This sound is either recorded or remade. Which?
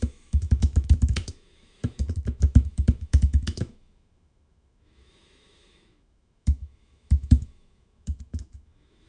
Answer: remade